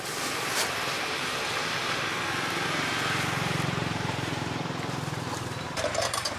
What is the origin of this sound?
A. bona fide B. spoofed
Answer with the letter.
B